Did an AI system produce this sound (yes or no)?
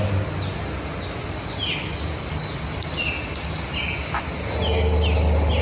no